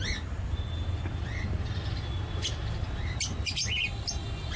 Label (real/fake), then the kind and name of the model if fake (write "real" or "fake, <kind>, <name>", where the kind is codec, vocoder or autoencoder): real